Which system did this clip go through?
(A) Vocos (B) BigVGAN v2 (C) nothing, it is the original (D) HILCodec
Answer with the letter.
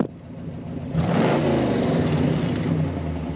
C